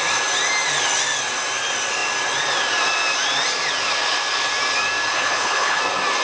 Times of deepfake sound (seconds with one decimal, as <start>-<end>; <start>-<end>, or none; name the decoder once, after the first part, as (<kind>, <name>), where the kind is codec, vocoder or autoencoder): 5.1-5.8 (codec, HILCodec)